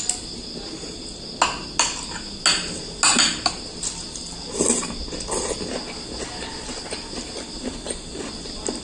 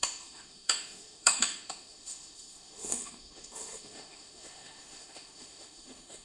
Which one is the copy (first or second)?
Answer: second